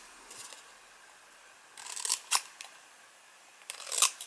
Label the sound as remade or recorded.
remade